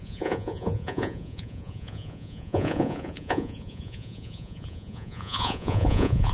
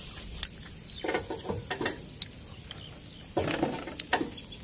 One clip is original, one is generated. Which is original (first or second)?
second